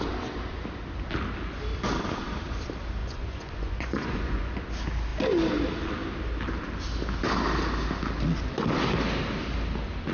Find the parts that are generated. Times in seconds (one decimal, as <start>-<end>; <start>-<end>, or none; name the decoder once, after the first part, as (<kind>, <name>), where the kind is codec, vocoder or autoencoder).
3.0-4.6 (vocoder, Vocos)